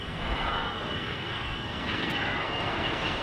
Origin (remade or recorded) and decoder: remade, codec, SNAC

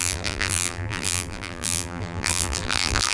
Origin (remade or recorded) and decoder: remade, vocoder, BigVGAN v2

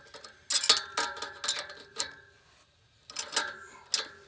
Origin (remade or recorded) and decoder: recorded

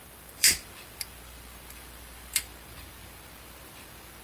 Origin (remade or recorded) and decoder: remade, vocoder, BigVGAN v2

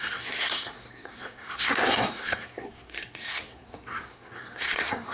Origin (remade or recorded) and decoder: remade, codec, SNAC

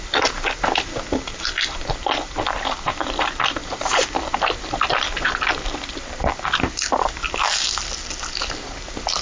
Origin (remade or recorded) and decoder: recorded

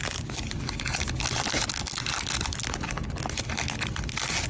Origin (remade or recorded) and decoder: recorded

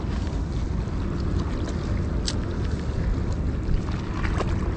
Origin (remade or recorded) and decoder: recorded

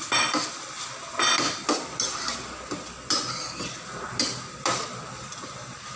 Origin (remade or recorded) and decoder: recorded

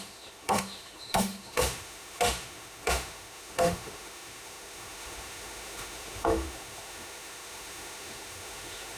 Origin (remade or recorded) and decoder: remade, autoencoder, DAC-VAE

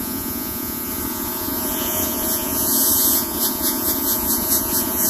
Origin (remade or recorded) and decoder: remade, vocoder, Vocos